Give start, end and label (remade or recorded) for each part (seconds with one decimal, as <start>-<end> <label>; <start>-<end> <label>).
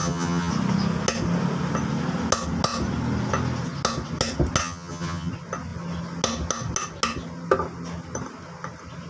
0.0-0.5 remade; 0.5-4.6 recorded; 4.6-5.3 remade; 5.3-9.1 recorded